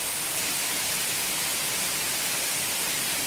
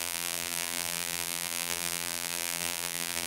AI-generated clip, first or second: second